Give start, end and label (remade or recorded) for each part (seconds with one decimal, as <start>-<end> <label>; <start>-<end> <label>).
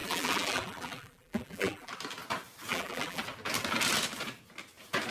0.0-1.9 remade; 1.9-2.7 recorded; 2.7-3.2 remade; 3.2-5.1 recorded